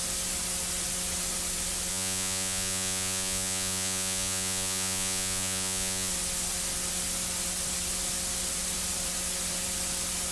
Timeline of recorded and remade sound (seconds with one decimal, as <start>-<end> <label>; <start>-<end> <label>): 0.0-1.9 recorded; 1.9-6.1 remade; 6.1-10.3 recorded